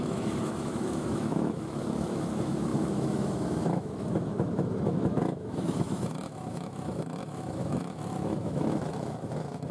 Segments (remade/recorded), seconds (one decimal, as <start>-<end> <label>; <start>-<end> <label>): 0.0-9.7 remade